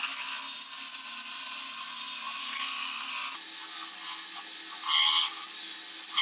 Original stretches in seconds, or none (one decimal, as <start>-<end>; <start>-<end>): 0.0-2.4; 3.1-6.2